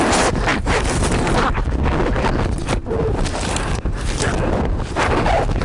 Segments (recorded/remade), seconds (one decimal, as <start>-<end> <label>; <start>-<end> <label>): 0.0-0.5 recorded; 0.5-3.9 remade; 3.9-5.6 recorded